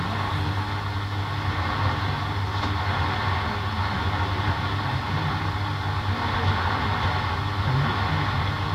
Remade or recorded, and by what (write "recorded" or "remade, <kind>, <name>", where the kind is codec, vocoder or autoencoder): recorded